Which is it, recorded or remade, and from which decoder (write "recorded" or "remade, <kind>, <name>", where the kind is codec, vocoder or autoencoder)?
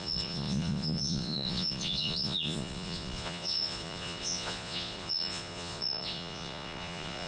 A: remade, vocoder, Vocos